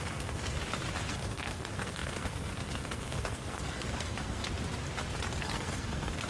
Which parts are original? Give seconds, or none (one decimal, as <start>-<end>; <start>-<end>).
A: 0.6-1.1; 4.4-5.4

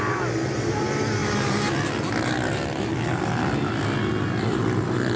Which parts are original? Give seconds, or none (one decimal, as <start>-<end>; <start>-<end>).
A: 0.0-5.2

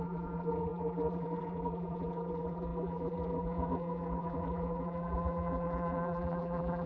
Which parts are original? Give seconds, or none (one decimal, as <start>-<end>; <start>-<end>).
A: none

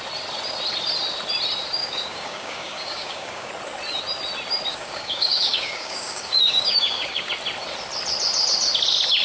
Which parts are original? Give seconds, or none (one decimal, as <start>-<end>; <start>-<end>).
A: 0.0-1.8; 3.5-4.7; 7.3-9.2

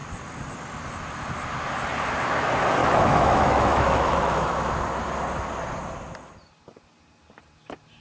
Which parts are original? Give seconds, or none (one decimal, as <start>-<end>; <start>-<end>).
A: 0.0-2.8; 4.7-8.0

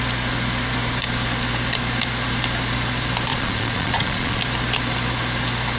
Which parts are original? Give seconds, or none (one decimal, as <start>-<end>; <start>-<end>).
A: 0.0-3.3; 4.4-5.8